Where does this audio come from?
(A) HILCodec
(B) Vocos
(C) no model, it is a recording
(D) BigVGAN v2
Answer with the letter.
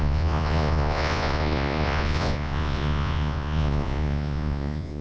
B